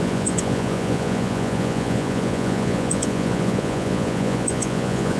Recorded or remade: remade